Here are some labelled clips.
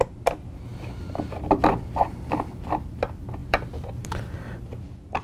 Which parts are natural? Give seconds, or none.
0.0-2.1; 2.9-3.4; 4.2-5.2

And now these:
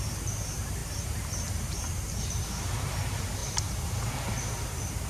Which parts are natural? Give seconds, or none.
none

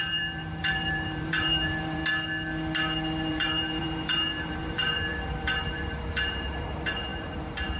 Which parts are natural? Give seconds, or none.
2.0-3.3

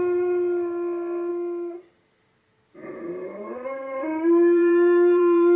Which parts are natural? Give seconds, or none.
0.0-2.8

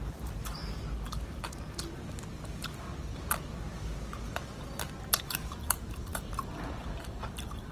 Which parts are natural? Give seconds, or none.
0.6-5.2